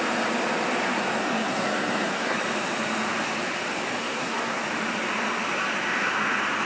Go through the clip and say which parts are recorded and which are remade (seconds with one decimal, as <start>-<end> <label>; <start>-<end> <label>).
0.0-1.2 recorded; 1.2-2.4 remade; 2.4-4.0 recorded; 4.0-4.6 remade; 4.6-6.6 recorded